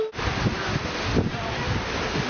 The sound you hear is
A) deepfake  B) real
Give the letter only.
B